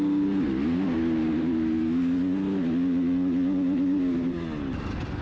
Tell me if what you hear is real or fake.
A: real